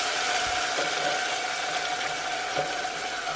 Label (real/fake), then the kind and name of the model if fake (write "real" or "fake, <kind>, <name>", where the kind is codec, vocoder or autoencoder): real